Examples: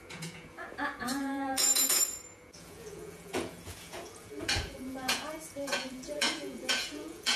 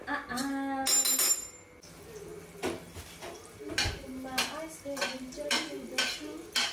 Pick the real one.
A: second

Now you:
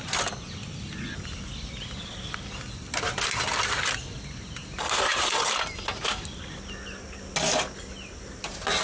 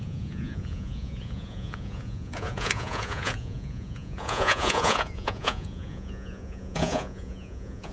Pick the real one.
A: first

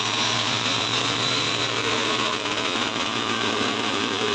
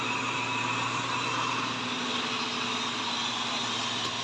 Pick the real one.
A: second